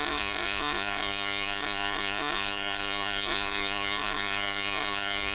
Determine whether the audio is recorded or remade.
remade